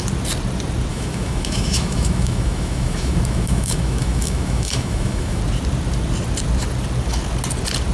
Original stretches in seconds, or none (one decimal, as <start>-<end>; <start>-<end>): 0.0-0.9; 5.4-7.9